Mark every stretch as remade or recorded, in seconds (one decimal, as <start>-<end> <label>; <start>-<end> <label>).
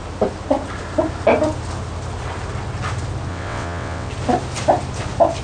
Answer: 0.0-3.3 recorded; 3.3-4.1 remade; 4.1-5.4 recorded